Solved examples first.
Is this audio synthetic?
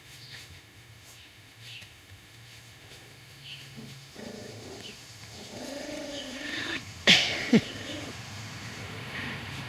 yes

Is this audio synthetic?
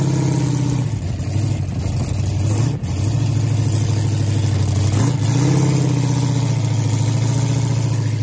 no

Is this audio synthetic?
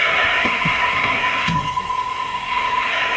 yes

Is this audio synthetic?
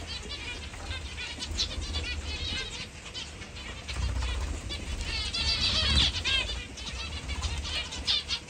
no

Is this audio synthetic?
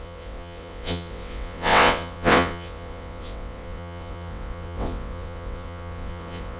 yes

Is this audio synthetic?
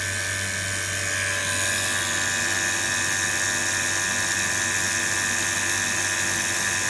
no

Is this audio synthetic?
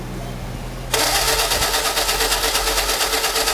no